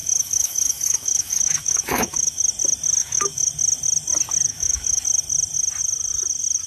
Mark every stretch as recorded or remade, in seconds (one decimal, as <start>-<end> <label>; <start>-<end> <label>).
0.0-2.4 remade; 2.4-3.0 recorded; 3.0-3.5 remade; 3.5-4.5 recorded; 4.5-5.0 remade; 5.0-6.7 recorded